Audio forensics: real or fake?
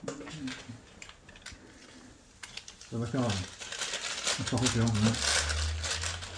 real